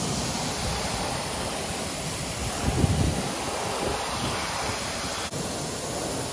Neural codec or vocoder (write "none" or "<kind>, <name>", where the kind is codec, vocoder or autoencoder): none